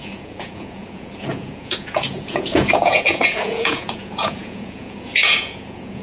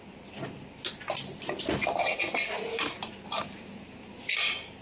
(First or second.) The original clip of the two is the second